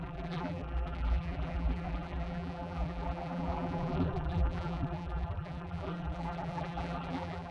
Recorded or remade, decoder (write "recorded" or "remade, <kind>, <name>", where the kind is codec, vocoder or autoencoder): remade, vocoder, BigVGAN v2